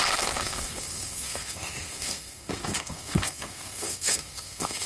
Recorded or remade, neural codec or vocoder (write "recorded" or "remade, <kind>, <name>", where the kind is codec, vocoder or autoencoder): remade, codec, SNAC